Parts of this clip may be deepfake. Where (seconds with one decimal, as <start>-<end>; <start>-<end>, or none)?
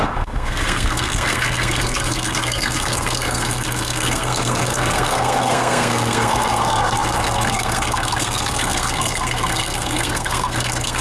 0.0-11.0